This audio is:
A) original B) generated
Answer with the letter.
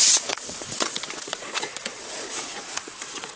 B